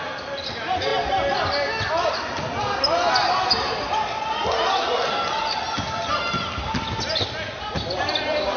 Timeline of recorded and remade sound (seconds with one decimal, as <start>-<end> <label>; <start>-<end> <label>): 0.0-8.6 recorded